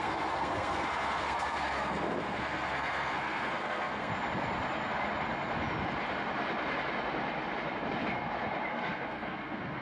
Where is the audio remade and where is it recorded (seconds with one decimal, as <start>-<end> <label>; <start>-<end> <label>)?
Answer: 0.0-4.1 remade; 4.1-8.7 recorded; 8.7-9.8 remade